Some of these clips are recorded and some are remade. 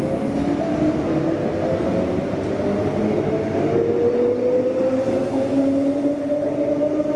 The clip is recorded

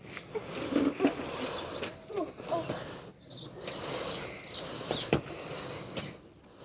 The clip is recorded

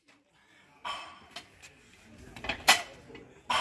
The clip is recorded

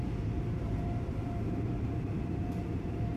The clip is remade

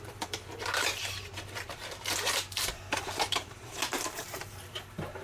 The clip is remade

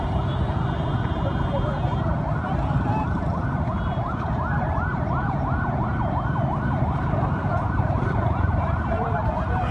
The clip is remade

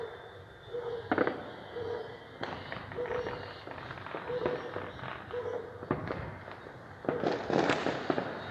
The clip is recorded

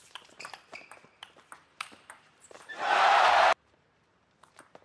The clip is remade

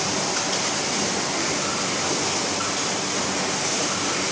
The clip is recorded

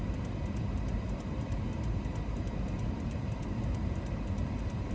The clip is remade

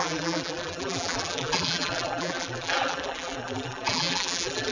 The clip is remade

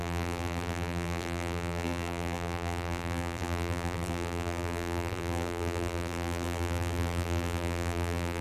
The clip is remade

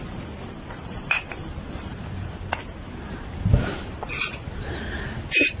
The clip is recorded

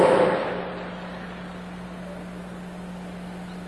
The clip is recorded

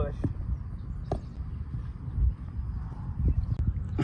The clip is recorded